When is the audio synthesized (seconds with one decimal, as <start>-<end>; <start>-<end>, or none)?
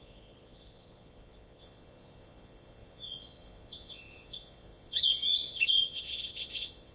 0.0-6.9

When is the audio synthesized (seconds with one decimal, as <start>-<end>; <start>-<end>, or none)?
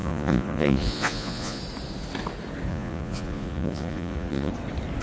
0.0-1.6; 2.7-4.5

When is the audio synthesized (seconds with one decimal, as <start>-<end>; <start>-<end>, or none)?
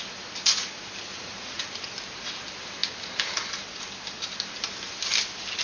1.1-1.6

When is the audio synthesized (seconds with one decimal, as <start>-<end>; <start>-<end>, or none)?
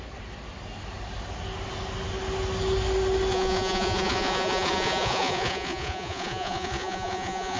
3.3-7.6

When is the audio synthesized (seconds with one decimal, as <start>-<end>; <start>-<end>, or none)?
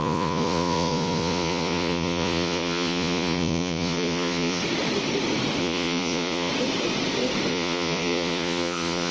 0.0-4.6; 5.6-6.5; 7.5-9.1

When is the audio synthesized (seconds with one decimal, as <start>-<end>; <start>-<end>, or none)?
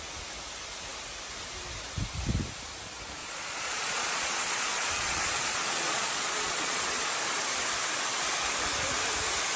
3.2-6.8